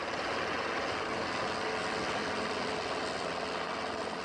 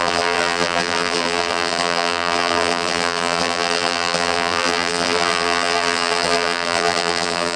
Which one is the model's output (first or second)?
second